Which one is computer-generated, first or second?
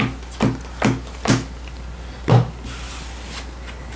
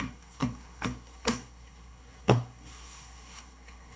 second